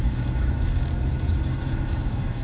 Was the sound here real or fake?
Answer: fake